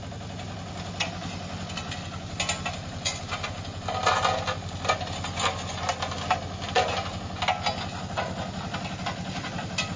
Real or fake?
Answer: real